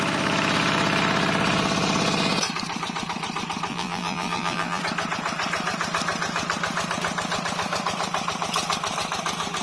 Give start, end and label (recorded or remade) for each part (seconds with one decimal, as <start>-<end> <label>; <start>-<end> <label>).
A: 0.0-3.7 recorded; 3.7-4.8 remade; 4.8-9.6 recorded